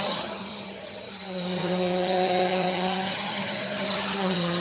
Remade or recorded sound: remade